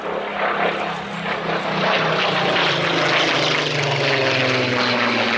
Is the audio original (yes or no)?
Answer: yes